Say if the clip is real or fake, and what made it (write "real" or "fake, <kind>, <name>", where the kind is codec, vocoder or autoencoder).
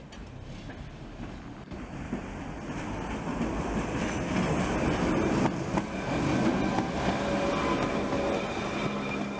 real